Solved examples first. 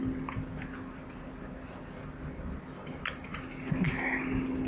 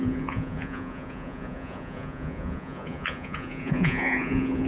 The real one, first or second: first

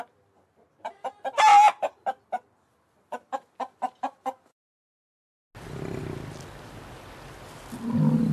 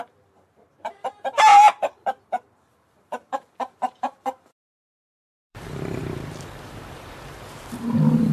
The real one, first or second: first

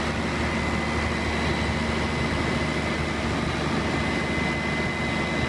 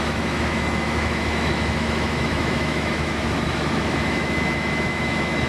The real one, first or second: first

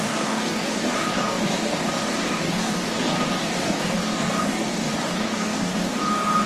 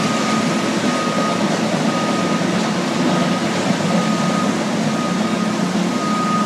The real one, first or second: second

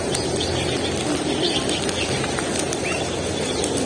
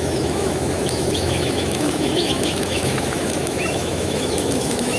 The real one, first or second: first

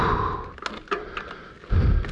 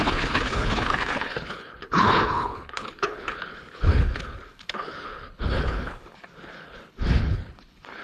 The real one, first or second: first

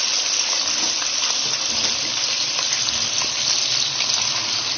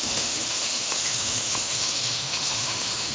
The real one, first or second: first